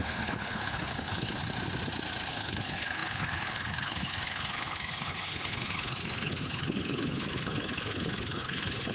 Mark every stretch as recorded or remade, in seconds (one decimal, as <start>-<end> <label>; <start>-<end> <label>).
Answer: 0.0-1.4 remade; 1.4-2.3 recorded; 2.3-8.9 remade